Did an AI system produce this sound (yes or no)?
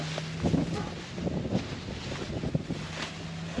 no